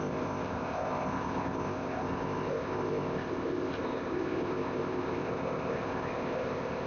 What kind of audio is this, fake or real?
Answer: fake